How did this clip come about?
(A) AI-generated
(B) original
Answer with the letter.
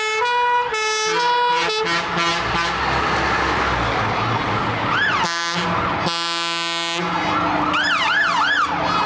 B